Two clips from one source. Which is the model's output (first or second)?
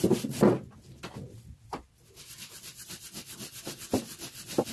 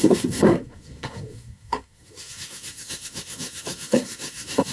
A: second